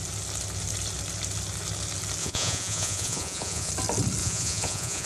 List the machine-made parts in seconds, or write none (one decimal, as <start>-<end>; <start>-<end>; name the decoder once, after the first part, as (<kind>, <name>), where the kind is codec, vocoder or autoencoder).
2.2-3.7 (vocoder, Vocos); 4.2-5.1